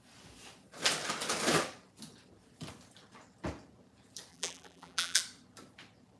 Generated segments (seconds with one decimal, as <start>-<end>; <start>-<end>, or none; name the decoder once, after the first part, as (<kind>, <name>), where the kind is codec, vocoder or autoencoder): 4.3-5.2 (vocoder, BigVGAN v2)